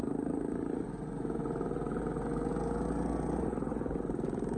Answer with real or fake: real